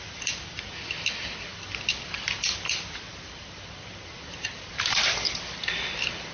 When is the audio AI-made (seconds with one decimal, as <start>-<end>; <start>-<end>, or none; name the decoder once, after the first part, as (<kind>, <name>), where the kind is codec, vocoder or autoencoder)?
none